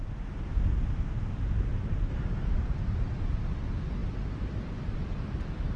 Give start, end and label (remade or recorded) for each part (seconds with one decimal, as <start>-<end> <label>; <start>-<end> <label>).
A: 0.0-5.8 recorded